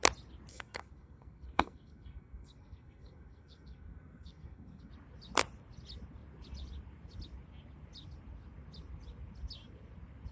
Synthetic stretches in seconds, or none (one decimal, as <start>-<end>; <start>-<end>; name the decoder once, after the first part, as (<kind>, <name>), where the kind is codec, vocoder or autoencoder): 0.5-4.9 (codec, SNAC)